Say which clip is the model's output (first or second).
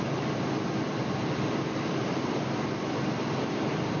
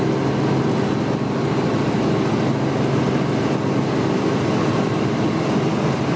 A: first